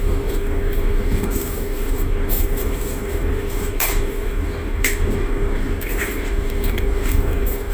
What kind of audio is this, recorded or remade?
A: remade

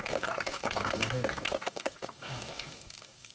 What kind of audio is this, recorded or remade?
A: remade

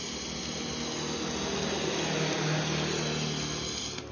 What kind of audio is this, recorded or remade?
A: recorded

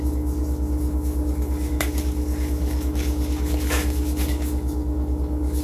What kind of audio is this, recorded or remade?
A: remade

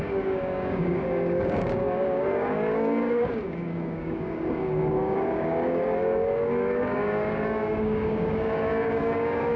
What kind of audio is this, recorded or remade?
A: remade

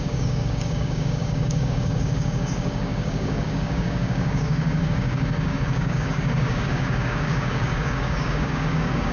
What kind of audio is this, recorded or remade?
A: remade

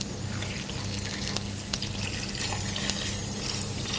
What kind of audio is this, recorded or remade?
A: recorded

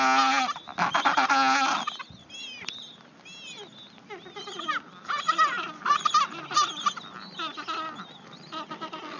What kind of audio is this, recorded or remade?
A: recorded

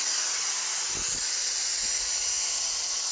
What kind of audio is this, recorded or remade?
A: recorded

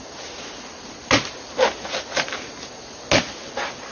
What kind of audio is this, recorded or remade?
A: recorded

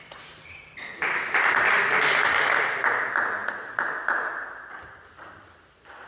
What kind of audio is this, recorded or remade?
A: recorded